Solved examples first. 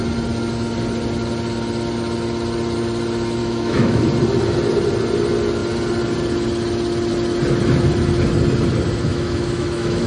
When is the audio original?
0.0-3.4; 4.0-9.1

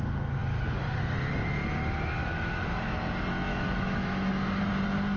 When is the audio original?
0.0-2.2; 3.1-3.5; 4.3-5.2

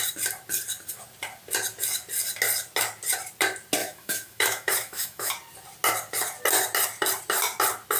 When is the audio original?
0.0-3.8; 5.3-8.0

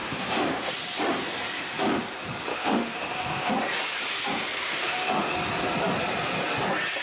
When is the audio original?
0.7-2.5; 3.5-4.6; 5.3-7.0

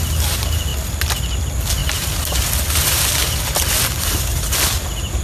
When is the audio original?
0.0-5.2